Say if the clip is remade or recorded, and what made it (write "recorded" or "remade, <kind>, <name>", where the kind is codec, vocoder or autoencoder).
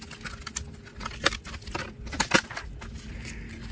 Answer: recorded